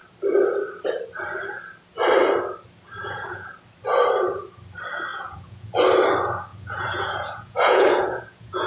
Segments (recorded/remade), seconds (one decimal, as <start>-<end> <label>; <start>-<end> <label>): 0.0-3.0 recorded; 3.0-3.5 remade; 3.5-5.1 recorded; 5.1-5.7 remade; 5.7-6.5 recorded; 6.5-8.7 remade